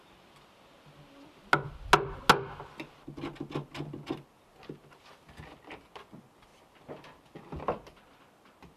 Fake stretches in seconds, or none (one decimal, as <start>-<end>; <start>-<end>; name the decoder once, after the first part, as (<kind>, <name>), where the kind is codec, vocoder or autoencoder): none